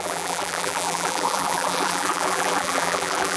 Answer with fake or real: fake